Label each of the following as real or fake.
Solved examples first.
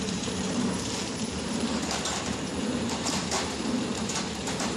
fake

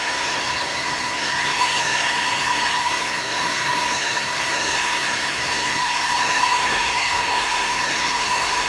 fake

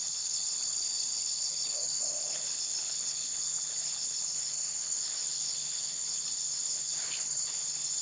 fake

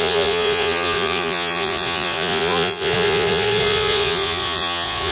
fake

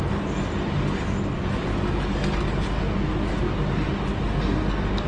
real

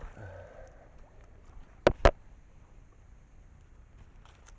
real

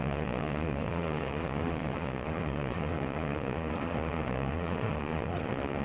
fake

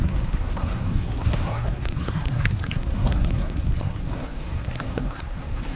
fake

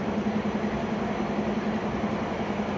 real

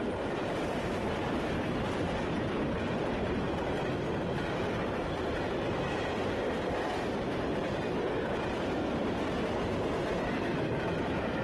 real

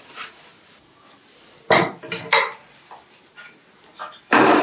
real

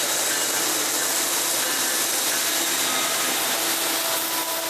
real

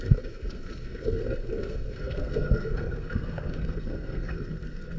fake